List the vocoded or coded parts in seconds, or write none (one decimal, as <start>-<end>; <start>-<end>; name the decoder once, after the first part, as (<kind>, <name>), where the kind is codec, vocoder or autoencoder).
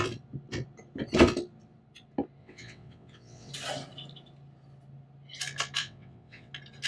2.4-3.5 (vocoder, WaveNeXt); 5.8-6.5